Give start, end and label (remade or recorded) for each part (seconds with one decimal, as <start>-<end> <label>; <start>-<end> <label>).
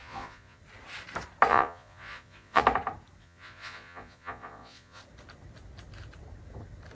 0.0-0.6 remade; 0.6-1.5 recorded; 1.5-2.6 remade; 2.6-3.2 recorded; 3.2-5.0 remade; 5.0-6.9 recorded